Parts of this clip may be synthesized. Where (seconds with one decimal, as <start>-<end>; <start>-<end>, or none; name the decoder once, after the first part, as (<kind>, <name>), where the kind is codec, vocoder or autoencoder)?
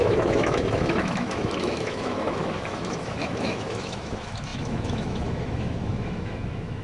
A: 0.0-6.8 (autoencoder, DAC-VAE)